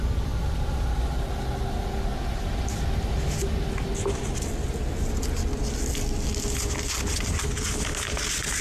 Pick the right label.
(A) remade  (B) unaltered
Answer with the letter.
B